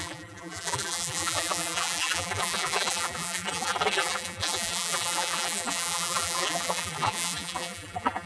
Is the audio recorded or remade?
remade